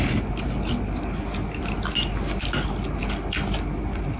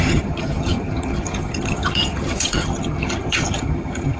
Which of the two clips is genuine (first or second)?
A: first